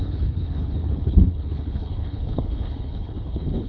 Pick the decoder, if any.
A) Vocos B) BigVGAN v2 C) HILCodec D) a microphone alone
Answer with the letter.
C